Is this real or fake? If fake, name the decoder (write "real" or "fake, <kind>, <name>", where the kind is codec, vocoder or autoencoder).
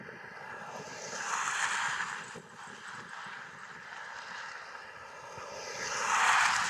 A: real